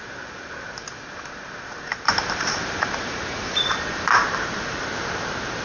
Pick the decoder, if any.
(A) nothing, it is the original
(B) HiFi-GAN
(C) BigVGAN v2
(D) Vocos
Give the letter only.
C